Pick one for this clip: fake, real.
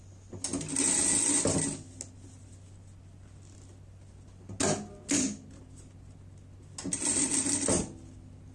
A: real